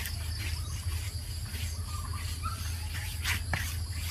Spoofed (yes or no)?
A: no